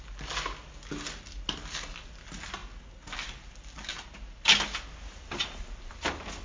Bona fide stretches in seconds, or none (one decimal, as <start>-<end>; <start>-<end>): 0.0-6.4